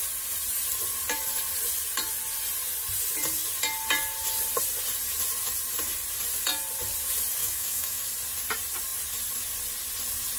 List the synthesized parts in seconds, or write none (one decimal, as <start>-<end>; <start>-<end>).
7.4-8.0